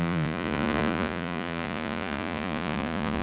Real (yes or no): no